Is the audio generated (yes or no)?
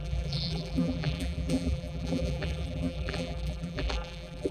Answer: yes